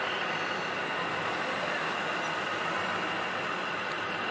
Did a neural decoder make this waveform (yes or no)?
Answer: no